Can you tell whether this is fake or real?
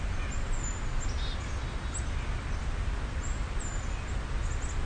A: real